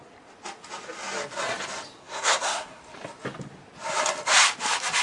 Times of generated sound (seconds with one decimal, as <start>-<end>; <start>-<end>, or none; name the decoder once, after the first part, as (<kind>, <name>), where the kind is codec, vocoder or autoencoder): 2.0-2.8 (codec, SNAC)